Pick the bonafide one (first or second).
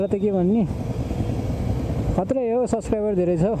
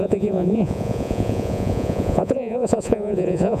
first